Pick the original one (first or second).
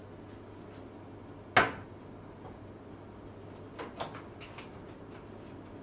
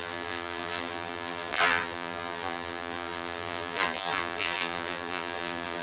first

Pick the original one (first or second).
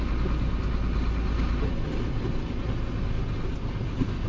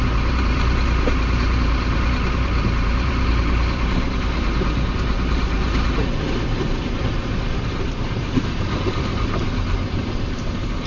first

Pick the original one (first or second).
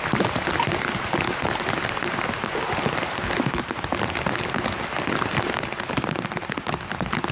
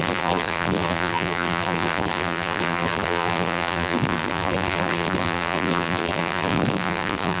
first